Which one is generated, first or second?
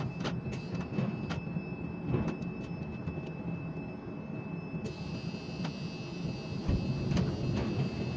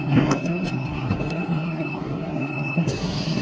second